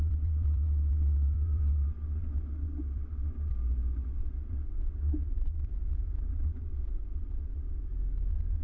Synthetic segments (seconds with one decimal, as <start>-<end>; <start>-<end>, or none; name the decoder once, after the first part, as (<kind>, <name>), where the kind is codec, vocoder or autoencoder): 0.0-3.5 (vocoder, WaveNeXt); 4.2-5.7; 6.3-7.9

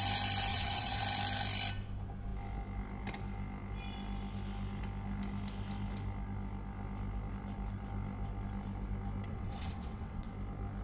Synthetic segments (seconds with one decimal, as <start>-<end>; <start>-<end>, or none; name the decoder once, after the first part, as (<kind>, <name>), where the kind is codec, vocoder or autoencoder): 0.5-1.0 (vocoder, WaveNeXt); 9.3-10.3